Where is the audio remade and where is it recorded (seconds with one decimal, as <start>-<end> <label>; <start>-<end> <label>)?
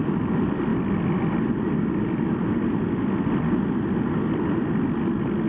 0.0-5.5 recorded